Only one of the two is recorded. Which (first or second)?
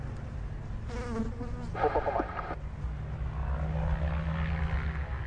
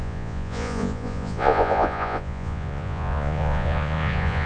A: first